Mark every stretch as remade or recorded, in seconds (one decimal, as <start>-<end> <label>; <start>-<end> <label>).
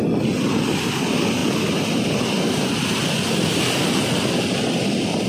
0.0-5.3 recorded